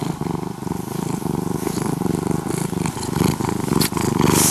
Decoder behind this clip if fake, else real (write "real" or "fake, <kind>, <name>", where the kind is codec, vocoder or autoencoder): real